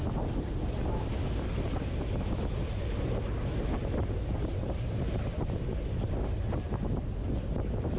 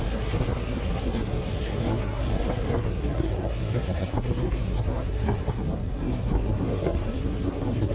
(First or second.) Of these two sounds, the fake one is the second